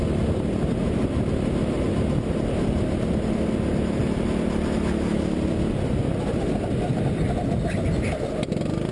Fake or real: real